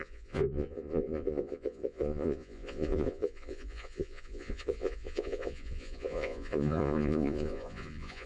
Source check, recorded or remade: remade